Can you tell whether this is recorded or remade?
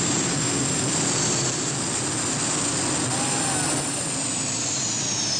recorded